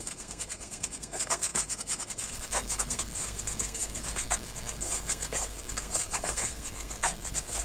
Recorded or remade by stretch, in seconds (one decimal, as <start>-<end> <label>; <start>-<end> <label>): 0.0-7.6 remade